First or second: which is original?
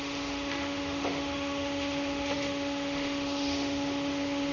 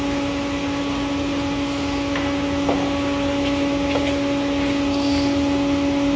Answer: second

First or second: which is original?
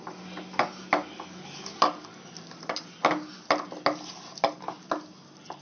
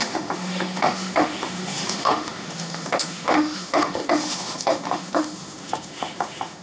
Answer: first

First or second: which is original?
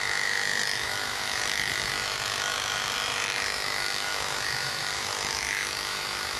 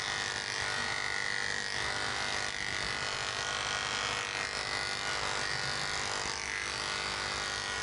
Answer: second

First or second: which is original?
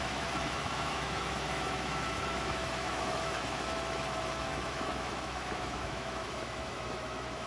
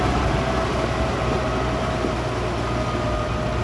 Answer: second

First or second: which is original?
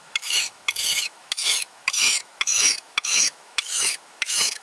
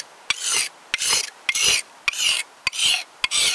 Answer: second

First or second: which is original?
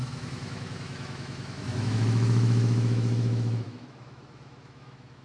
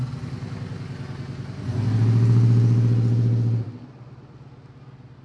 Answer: second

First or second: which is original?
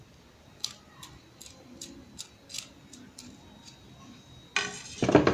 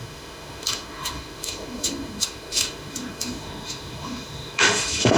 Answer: first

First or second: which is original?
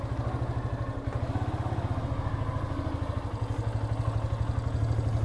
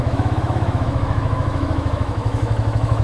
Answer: first